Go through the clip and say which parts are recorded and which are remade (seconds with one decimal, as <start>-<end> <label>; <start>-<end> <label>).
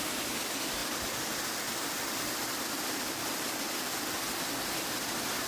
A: 0.0-0.8 recorded; 0.8-4.1 remade; 4.1-5.5 recorded